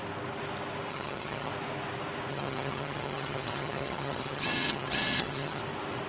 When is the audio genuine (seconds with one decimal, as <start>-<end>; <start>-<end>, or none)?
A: 0.0-0.9; 1.5-2.3; 5.6-6.1